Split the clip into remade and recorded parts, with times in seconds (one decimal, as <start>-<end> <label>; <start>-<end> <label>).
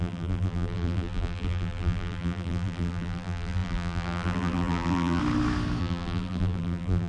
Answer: 0.0-5.2 remade; 5.2-5.8 recorded; 5.8-7.1 remade